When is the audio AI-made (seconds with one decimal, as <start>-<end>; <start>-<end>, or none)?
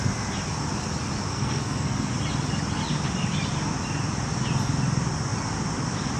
1.3-2.1